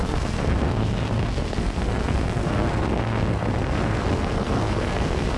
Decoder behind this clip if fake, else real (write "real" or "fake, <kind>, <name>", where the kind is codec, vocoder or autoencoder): fake, codec, SNAC